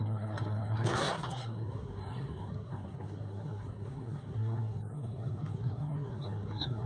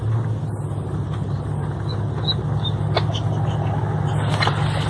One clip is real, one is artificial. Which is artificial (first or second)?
first